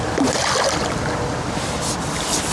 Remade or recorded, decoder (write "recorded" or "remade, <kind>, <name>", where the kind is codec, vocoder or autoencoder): recorded